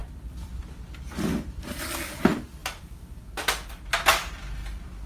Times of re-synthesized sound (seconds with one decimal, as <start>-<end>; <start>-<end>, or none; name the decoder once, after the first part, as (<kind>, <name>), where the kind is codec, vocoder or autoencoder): 0.0-0.6 (vocoder, BigVGAN v2)